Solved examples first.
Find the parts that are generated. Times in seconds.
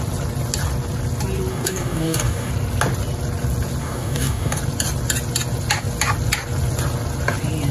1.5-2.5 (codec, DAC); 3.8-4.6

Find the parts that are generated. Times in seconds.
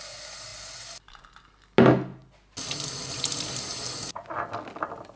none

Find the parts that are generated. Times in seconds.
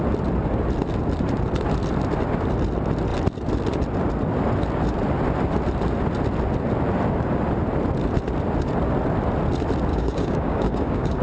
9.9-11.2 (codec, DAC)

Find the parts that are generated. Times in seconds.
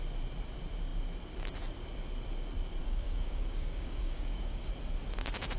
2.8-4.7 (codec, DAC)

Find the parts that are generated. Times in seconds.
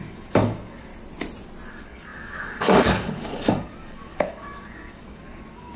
0.0-0.9 (codec, DAC); 1.7-5.8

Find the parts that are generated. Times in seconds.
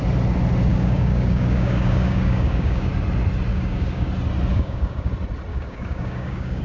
0.7-2.9 (codec, DAC); 3.5-4.1; 4.5-5.1; 5.5-6.6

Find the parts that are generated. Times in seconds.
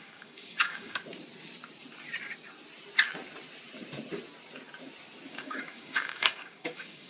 0.0-1.0 (codec, DAC); 5.3-7.1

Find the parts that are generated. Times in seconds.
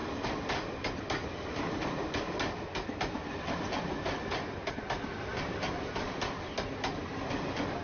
none